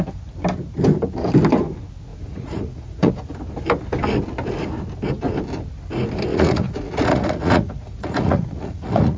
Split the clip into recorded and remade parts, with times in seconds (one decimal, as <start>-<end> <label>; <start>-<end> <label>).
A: 0.0-2.1 recorded; 2.1-3.1 remade; 3.1-6.3 recorded; 6.3-9.2 remade